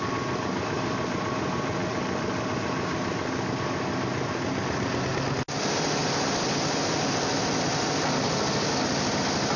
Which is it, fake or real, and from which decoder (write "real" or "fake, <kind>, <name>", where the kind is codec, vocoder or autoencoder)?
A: real